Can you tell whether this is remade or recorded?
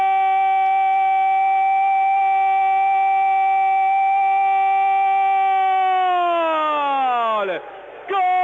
recorded